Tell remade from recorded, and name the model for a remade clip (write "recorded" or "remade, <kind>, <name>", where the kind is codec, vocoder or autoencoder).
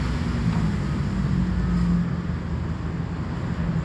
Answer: recorded